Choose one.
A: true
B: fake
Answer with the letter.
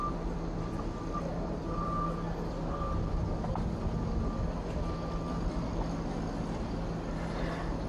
A